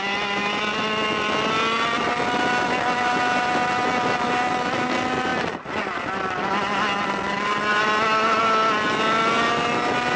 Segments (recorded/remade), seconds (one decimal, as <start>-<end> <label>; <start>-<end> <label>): 0.0-10.2 recorded